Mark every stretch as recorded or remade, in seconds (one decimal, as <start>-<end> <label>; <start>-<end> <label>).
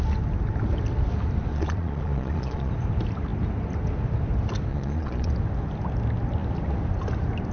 0.0-1.5 recorded; 1.5-2.7 remade; 2.7-4.7 recorded; 4.7-5.3 remade; 5.3-7.5 recorded